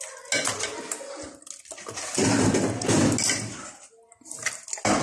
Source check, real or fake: real